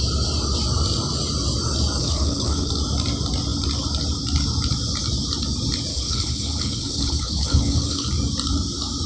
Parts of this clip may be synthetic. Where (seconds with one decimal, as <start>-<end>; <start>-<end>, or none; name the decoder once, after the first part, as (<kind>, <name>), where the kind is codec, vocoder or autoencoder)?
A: 2.0-2.7 (codec, HILCodec); 5.9-8.1